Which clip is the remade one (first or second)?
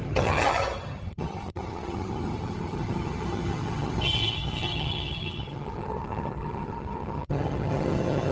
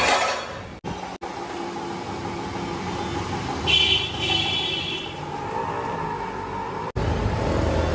first